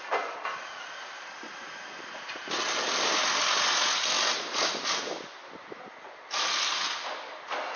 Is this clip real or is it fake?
real